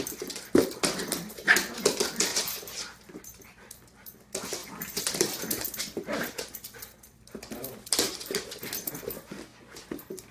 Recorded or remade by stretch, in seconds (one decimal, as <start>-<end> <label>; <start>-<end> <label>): 0.0-2.3 remade; 2.3-3.2 recorded; 3.2-10.3 remade